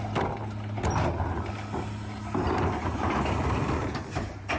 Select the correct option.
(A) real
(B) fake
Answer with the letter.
A